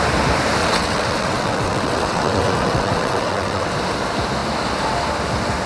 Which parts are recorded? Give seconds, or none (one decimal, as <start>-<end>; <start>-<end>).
0.0-0.6; 3.7-5.7